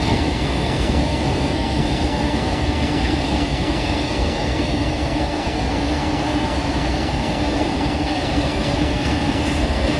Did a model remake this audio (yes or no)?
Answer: yes